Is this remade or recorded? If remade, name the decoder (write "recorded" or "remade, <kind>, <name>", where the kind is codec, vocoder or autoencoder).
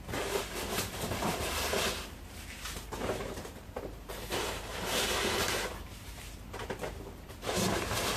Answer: remade, vocoder, BigVGAN v2